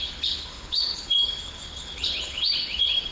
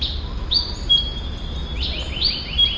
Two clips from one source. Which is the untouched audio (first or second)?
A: second